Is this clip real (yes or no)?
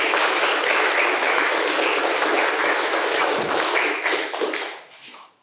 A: no